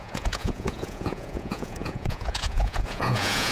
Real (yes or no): no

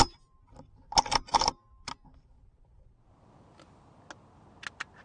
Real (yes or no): yes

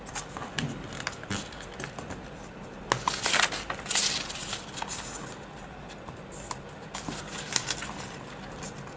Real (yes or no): yes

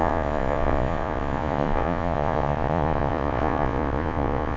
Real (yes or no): no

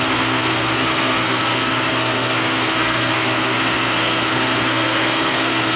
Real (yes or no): no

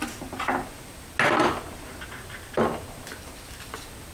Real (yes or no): yes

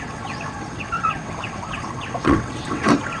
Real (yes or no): no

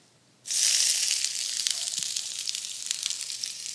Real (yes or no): no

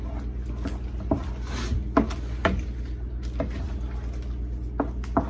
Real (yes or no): yes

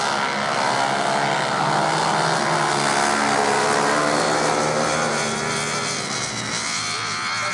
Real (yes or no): yes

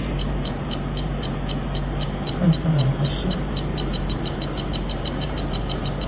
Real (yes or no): no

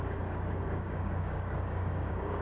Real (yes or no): no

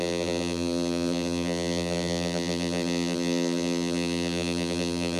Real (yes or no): no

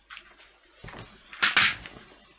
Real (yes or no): yes